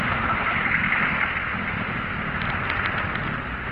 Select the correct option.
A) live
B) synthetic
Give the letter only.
A